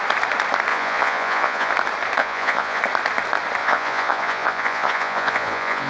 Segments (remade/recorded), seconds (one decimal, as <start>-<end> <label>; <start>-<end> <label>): 0.0-0.7 recorded; 0.7-1.7 remade; 1.7-2.2 recorded; 2.2-2.8 remade; 2.8-3.6 recorded; 3.6-5.9 remade